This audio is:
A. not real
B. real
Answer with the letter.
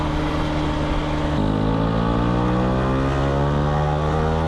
B